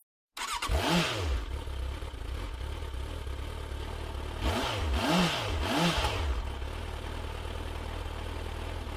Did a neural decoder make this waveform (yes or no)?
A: no